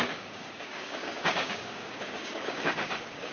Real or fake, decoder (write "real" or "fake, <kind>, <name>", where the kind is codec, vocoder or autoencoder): fake, codec, DAC